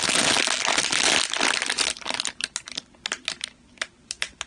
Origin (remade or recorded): recorded